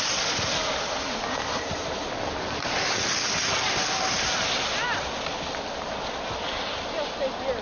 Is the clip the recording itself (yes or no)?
yes